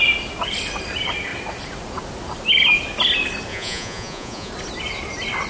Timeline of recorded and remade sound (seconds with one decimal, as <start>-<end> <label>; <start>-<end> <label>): 0.0-3.5 recorded; 3.5-4.5 remade; 4.5-5.5 recorded